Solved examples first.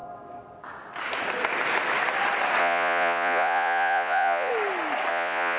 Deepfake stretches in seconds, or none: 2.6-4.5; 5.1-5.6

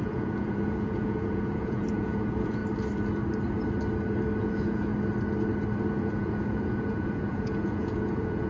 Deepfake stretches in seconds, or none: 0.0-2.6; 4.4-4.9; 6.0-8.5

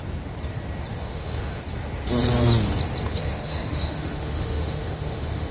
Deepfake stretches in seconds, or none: 1.0-1.6; 3.1-5.5

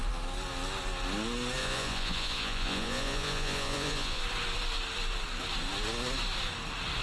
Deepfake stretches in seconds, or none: 1.6-4.2